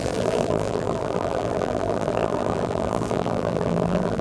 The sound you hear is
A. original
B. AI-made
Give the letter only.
B